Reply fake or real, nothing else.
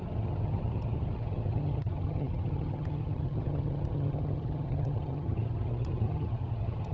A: fake